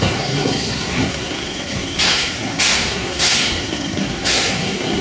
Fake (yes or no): yes